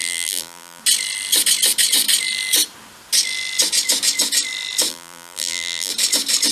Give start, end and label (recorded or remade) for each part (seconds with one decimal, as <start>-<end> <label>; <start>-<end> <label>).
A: 0.0-0.8 remade; 0.8-4.9 recorded; 4.9-5.9 remade; 5.9-6.5 recorded